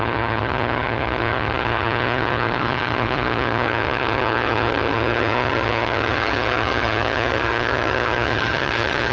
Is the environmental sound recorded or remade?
remade